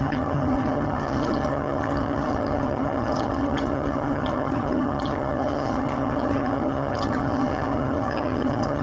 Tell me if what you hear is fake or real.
fake